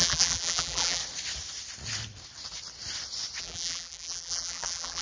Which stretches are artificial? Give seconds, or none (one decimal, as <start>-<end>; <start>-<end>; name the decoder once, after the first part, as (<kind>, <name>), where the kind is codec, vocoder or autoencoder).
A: 0.0-1.0 (vocoder, BigVGAN v2); 3.4-5.0